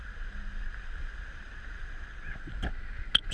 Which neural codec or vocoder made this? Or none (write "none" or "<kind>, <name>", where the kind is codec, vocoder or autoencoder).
none